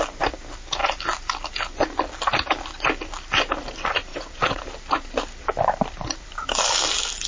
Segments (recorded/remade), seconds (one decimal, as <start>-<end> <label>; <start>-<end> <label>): 0.0-4.1 recorded; 4.1-4.6 remade; 4.6-7.3 recorded